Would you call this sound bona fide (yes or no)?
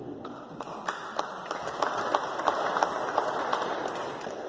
yes